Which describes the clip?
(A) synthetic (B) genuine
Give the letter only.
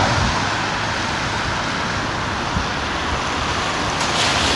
B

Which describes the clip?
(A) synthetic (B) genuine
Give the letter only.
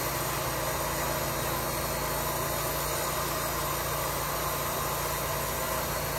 B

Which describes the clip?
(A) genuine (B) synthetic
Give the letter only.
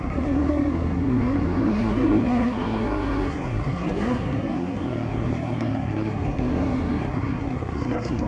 B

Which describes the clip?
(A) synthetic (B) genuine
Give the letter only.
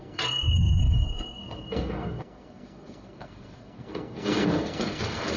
A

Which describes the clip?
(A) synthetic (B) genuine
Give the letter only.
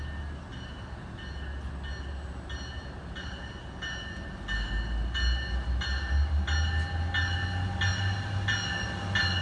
B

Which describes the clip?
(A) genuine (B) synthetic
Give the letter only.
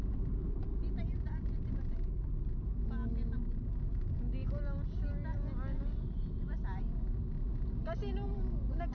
A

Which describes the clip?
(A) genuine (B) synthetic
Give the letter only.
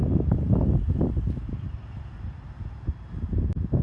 A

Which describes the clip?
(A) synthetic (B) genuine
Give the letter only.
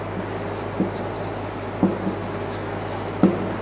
B